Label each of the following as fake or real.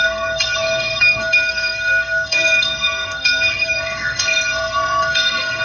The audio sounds fake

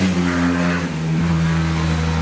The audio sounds real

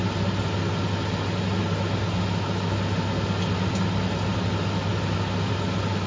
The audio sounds real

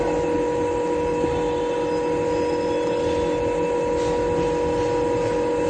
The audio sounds real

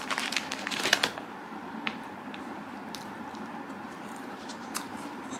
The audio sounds fake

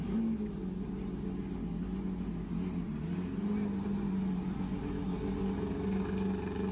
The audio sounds real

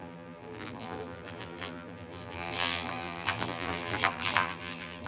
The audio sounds fake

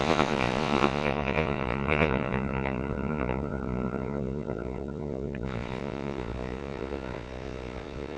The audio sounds fake